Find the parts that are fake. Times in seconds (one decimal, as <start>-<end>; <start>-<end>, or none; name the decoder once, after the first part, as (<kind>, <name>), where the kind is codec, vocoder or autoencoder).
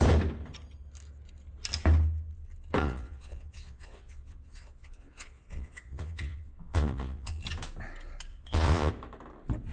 2.8-7.4 (vocoder, Vocos); 8.3-8.9